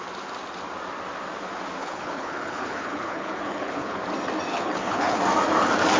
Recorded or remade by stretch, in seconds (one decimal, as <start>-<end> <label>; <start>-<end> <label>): 0.0-1.8 recorded; 1.8-4.0 remade; 4.0-4.5 recorded; 4.5-5.2 remade; 5.2-6.0 recorded